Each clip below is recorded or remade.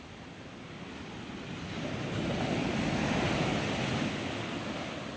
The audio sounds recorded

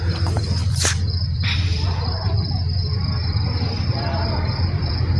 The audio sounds remade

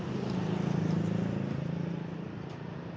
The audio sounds recorded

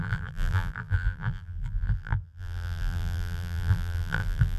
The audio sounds remade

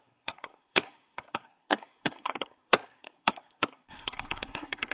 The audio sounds remade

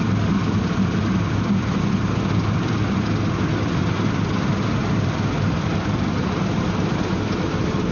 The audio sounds remade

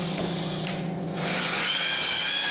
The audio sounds remade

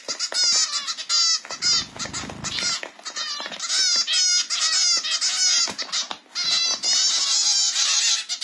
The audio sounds recorded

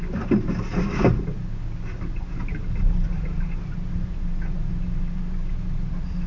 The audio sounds recorded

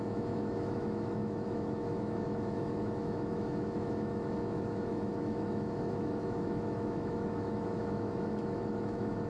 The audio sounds remade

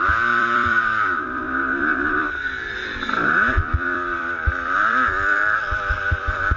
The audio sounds remade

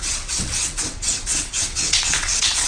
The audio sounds remade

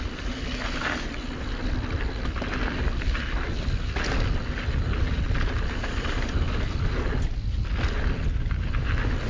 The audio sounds recorded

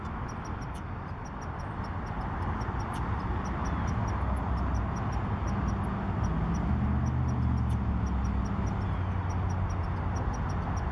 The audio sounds recorded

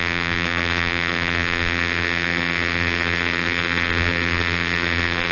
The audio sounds remade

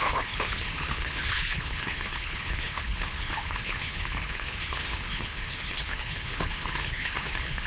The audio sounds remade